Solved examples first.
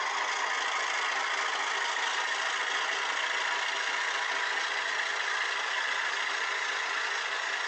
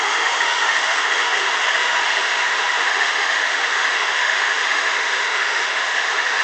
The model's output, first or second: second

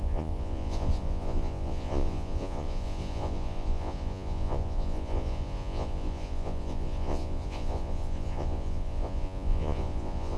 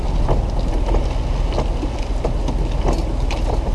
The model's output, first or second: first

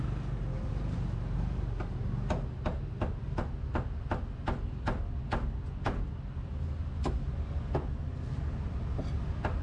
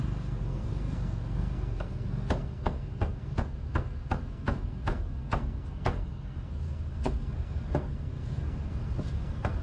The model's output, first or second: second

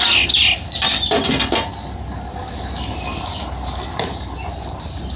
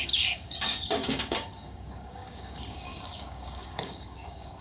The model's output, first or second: second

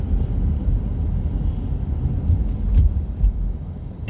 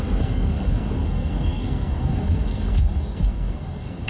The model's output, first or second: second